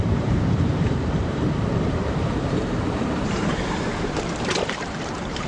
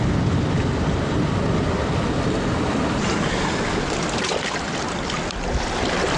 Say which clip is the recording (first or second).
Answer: second